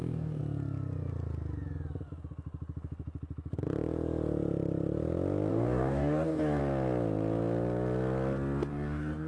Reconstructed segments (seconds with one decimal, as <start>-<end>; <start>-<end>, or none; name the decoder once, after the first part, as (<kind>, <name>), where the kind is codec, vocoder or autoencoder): 0.0-0.4 (codec, DAC); 5.5-6.6; 8.7-9.3